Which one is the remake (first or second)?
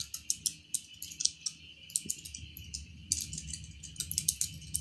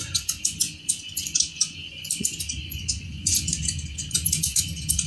second